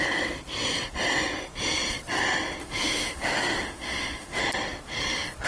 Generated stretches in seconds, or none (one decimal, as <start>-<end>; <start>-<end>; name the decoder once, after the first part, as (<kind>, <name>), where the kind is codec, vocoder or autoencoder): 2.6-4.4 (autoencoder, DAC-VAE)